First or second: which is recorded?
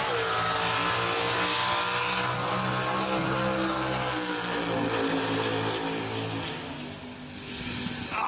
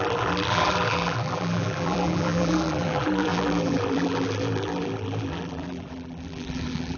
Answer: first